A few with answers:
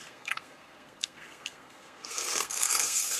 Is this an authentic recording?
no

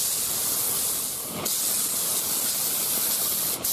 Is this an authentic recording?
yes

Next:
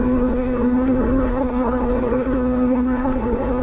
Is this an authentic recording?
no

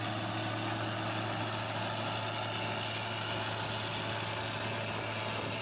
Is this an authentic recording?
yes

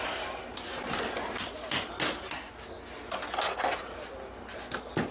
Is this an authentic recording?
yes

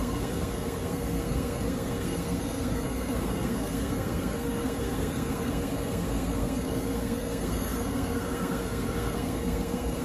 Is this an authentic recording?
no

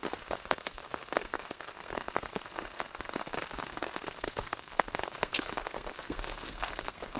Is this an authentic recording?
no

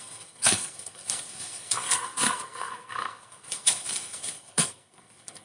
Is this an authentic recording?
no